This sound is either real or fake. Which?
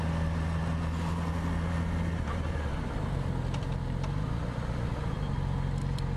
real